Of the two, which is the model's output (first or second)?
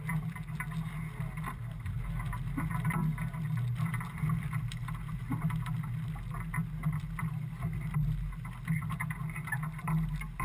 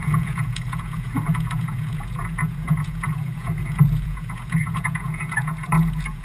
second